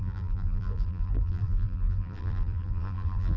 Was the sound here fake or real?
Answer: fake